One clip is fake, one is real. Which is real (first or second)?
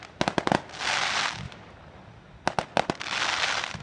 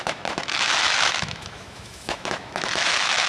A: first